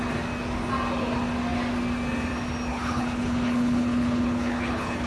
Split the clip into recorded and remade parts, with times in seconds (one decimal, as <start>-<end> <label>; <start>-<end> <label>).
0.0-2.7 recorded; 2.7-5.1 remade